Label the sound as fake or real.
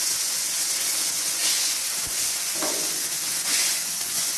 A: fake